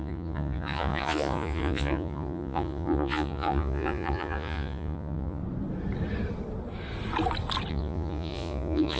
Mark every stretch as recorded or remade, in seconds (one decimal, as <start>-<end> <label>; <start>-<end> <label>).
0.0-5.4 remade; 5.4-7.7 recorded; 7.7-9.0 remade